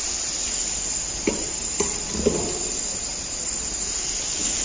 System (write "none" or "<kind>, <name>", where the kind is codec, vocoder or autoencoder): none